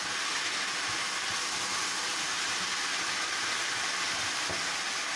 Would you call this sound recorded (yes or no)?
yes